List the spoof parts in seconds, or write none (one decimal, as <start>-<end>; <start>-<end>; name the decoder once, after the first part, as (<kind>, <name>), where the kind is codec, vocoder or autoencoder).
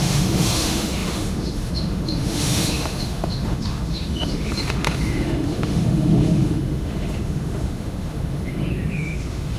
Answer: 0.0-9.6 (autoencoder, DAC-VAE)